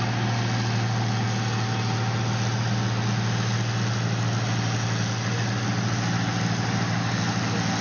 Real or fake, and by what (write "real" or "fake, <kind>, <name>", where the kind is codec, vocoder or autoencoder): real